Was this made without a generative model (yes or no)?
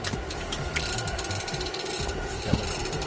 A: no